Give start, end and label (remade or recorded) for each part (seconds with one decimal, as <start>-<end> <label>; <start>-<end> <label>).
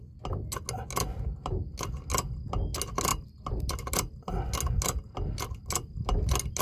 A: 0.0-3.1 recorded; 3.1-3.8 remade; 3.8-6.6 recorded